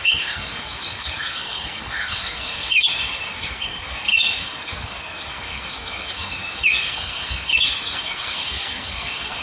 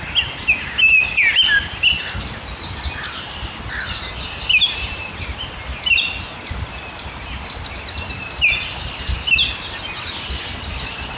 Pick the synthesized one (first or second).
first